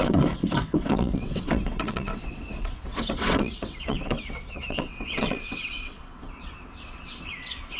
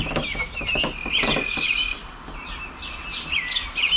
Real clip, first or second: second